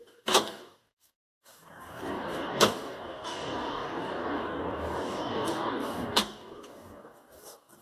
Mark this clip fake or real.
fake